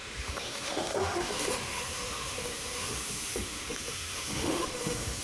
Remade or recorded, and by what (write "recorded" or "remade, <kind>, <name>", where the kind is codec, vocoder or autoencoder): remade, autoencoder, DAC-VAE